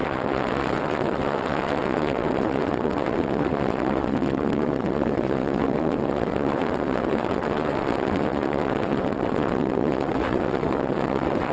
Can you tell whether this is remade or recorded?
remade